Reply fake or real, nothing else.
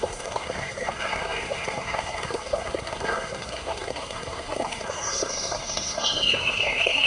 fake